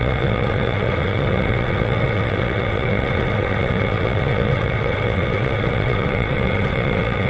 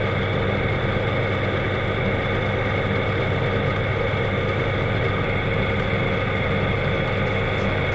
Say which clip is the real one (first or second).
second